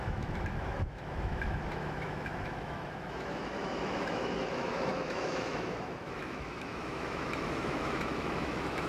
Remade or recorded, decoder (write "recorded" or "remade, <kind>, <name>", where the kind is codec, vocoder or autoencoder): remade, autoencoder, DAC-VAE